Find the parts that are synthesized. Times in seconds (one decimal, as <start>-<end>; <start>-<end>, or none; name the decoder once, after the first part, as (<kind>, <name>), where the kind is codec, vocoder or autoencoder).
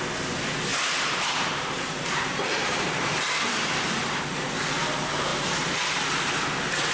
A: 0.7-4.2 (vocoder, BigVGAN v2); 5.3-6.0